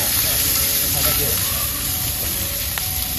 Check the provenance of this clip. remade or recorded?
remade